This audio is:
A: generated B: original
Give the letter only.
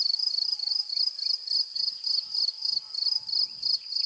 B